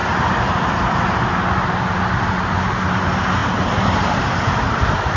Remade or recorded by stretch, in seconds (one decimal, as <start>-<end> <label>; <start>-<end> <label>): 0.0-5.2 recorded